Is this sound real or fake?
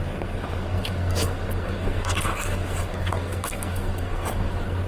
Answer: fake